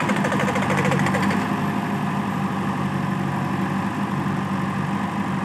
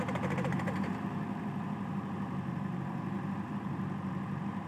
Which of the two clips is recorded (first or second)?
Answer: first